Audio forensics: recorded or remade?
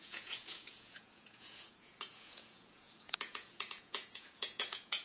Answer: remade